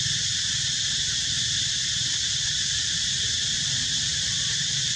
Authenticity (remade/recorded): remade